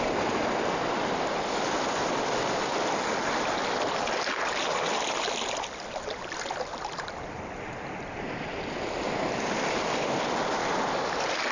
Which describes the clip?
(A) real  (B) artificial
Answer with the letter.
A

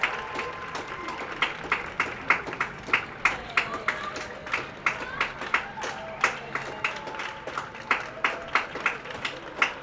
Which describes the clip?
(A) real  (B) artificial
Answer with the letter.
A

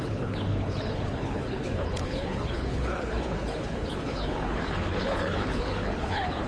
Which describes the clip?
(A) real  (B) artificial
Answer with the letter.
B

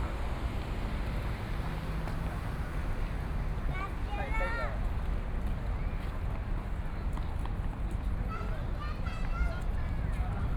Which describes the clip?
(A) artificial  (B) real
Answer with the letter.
B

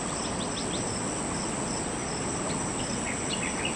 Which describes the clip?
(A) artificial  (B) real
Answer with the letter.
B